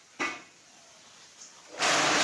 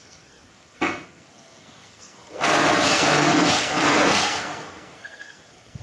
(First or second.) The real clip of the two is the first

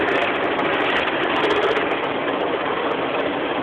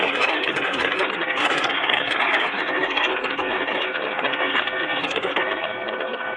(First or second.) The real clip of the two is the first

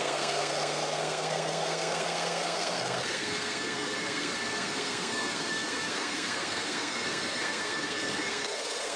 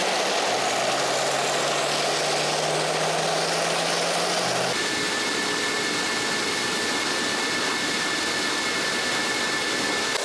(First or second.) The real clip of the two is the second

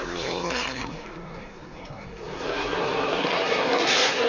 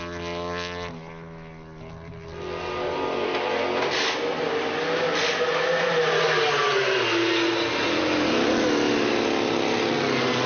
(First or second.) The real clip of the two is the second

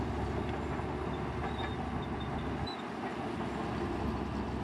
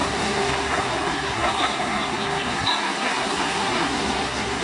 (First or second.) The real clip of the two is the first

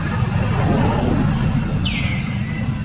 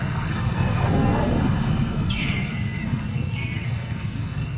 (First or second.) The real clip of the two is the first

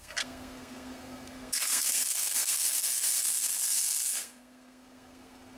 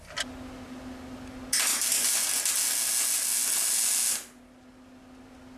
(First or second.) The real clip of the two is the second